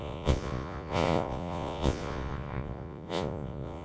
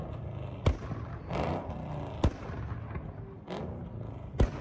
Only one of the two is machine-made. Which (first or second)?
first